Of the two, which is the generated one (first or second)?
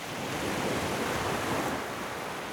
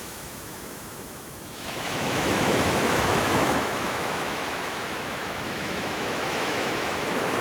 second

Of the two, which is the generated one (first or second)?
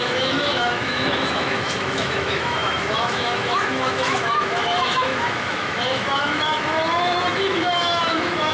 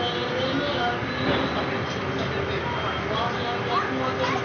first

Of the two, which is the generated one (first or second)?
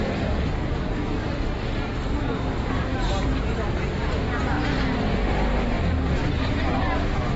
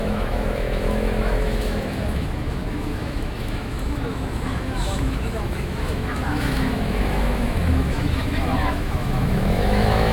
second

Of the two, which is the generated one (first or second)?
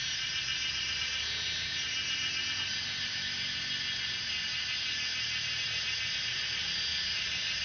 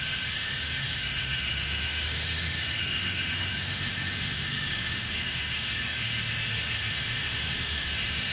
second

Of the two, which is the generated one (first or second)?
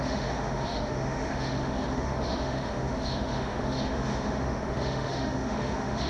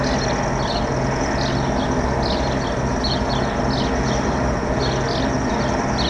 first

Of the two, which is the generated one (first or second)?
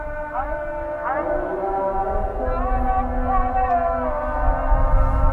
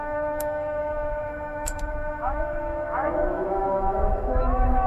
second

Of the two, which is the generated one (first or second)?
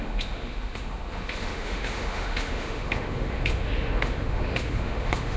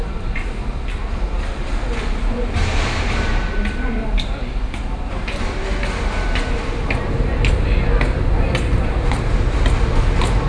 first